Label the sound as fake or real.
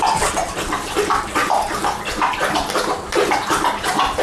real